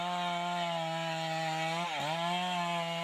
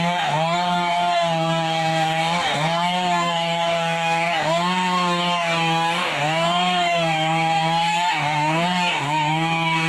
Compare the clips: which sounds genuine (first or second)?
first